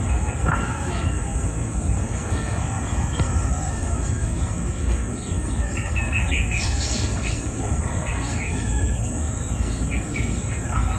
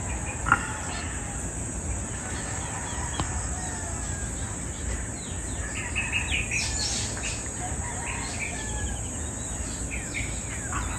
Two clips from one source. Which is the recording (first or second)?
second